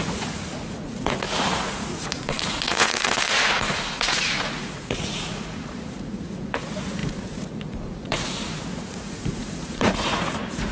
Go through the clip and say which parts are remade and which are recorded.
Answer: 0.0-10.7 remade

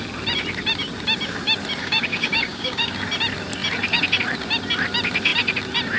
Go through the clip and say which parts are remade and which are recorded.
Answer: 0.0-1.8 recorded; 1.8-2.9 remade; 2.9-6.0 recorded

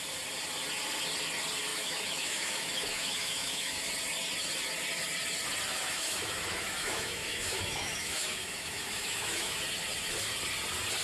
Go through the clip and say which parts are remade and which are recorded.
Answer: 0.0-1.7 recorded; 1.7-3.9 remade; 3.9-5.7 recorded; 5.7-9.6 remade; 9.6-11.0 recorded